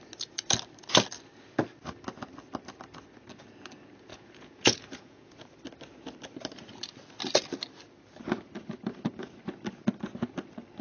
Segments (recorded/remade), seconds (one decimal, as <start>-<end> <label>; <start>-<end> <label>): 0.0-4.1 recorded; 4.1-5.4 remade; 5.4-10.8 recorded